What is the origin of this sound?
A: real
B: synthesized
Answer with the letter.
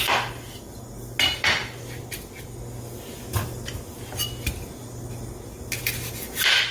A